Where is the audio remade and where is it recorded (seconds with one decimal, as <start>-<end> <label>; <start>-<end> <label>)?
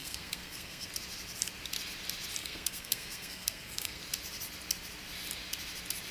0.0-0.9 remade; 0.9-2.4 recorded; 2.4-4.0 remade; 4.0-6.1 recorded